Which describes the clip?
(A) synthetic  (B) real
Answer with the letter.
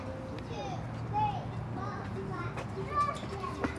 B